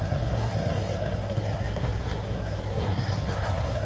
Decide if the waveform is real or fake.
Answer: fake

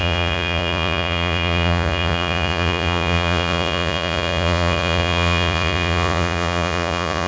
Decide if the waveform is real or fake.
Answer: fake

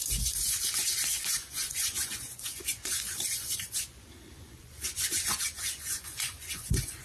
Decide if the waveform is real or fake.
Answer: fake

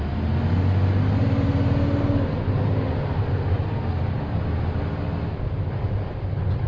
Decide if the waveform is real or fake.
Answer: real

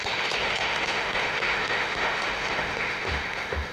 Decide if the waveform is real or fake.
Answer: fake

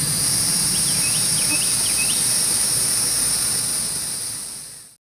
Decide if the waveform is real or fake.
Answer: real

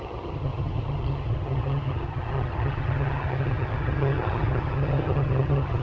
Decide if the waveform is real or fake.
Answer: fake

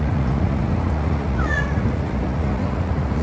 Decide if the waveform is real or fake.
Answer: fake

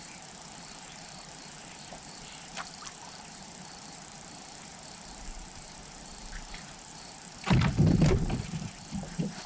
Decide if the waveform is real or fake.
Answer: fake